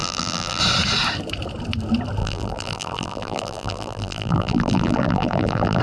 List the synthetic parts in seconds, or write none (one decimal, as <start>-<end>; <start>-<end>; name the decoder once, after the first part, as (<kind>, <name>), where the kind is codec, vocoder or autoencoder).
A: 0.0-0.6 (vocoder, BigVGAN v2); 2.2-5.8